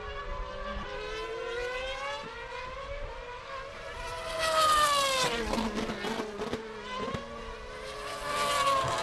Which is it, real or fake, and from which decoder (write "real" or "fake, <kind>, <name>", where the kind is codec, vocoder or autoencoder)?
real